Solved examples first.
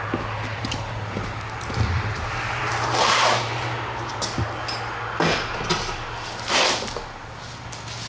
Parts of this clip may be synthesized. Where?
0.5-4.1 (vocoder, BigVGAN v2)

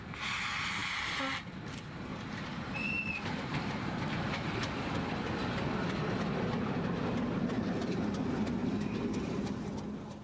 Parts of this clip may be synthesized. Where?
0.8-1.4 (vocoder, BigVGAN v2); 2.1-4.9; 8.6-9.6

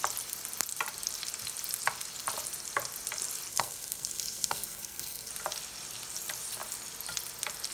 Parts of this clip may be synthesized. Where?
3.5-5.3 (codec, SNAC)

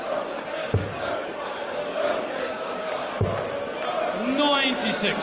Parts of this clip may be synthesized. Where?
0.6-3.1 (codec, DAC)

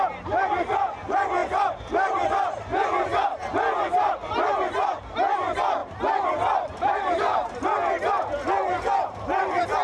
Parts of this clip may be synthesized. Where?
1.4-2.3 (vocoder, BigVGAN v2); 5.8-7.1

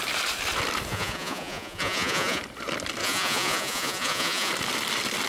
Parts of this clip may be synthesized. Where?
0.9-2.4 (vocoder, Vocos); 3.0-4.5

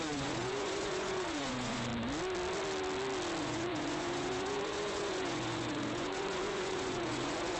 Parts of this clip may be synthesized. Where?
0.0-1.9 (vocoder, Vocos); 3.4-7.6

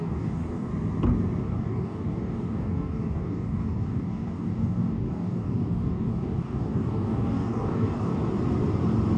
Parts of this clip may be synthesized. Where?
0.0-0.7 (codec, DAC); 1.4-8.1